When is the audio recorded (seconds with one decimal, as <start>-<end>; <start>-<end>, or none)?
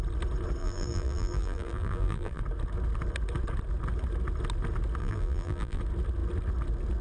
0.0-0.6; 2.4-5.0; 5.8-7.0